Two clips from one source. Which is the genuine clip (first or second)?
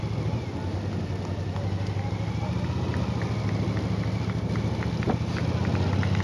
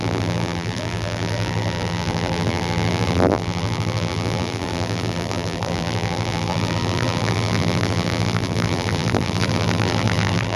first